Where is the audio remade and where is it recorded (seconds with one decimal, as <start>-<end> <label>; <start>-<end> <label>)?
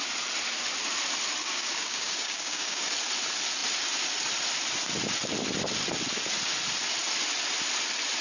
0.0-1.4 recorded; 1.4-2.9 remade; 2.9-8.2 recorded